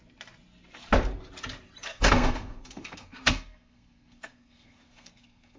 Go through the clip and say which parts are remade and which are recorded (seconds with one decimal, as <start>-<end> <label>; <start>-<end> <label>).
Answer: 0.0-1.9 recorded; 1.9-5.6 remade